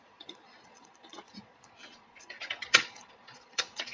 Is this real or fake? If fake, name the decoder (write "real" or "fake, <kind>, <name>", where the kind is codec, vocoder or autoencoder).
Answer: fake, vocoder, Vocos